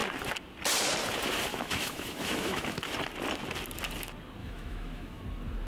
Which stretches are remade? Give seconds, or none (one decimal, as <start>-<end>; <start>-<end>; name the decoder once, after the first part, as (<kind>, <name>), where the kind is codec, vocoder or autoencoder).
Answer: 1.5-2.9 (autoencoder, DAC-VAE); 4.4-5.2